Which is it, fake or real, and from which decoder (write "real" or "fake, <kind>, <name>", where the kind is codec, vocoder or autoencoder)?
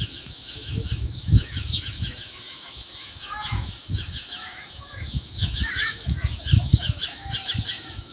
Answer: fake, autoencoder, DAC-VAE